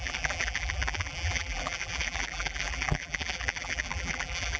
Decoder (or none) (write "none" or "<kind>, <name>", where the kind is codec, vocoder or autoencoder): vocoder, BigVGAN v2